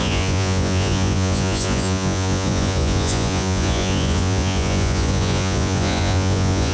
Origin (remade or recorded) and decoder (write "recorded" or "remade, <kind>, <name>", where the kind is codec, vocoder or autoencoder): remade, vocoder, Vocos